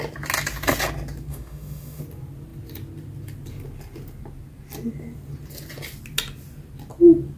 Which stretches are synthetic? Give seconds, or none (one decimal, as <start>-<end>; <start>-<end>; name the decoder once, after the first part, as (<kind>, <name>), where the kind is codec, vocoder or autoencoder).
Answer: 1.3-2.0 (autoencoder, DAC-VAE)